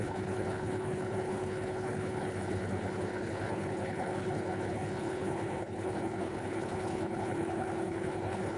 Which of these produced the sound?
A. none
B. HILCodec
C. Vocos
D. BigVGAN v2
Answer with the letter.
B